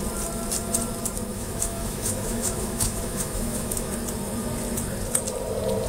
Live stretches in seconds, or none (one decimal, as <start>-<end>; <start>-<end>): 0.0-1.3; 3.9-5.9